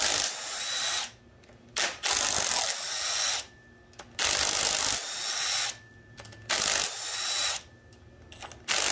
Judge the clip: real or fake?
real